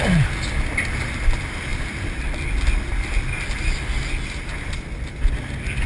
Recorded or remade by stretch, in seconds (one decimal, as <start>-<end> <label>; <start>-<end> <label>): 0.0-5.9 recorded